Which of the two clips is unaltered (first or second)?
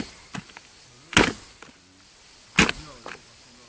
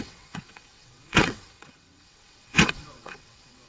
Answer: first